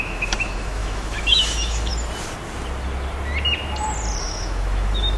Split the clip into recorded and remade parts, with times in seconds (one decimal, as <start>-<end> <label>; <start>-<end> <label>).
0.0-1.9 remade; 1.9-4.2 recorded; 4.2-5.2 remade